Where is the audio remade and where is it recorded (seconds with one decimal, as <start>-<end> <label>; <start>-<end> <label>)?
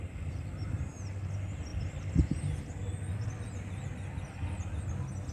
0.0-5.3 recorded